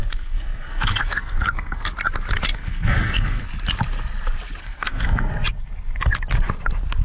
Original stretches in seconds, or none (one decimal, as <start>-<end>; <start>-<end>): 1.9-2.5; 3.5-4.6; 5.3-7.0